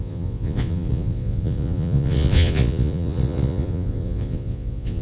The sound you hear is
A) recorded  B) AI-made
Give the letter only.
B